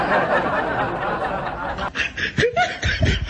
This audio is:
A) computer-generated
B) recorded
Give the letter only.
B